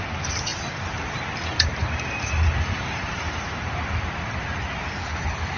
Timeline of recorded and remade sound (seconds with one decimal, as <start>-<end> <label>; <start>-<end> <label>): 0.0-5.0 recorded; 5.0-5.6 remade